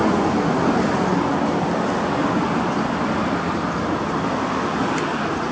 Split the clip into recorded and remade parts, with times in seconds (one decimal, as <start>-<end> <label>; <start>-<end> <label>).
0.0-5.5 recorded